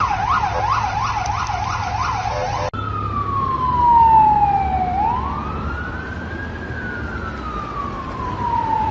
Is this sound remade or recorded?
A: recorded